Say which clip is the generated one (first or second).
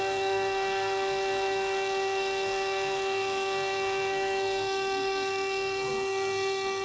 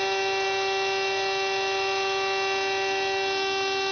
first